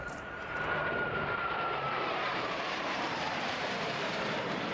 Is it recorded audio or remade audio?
remade